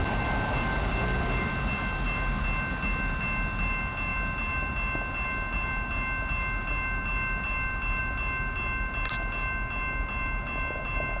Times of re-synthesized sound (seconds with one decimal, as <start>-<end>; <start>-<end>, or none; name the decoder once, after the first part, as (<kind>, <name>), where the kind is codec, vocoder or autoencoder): none